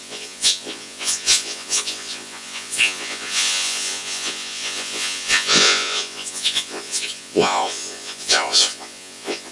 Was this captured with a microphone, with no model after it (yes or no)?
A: no